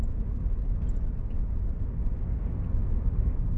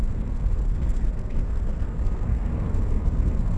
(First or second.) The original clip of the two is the first